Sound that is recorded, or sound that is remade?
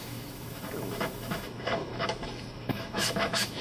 remade